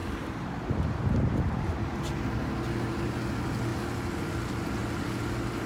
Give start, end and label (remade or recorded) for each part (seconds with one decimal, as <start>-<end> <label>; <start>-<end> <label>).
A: 0.0-1.0 remade; 1.0-5.7 recorded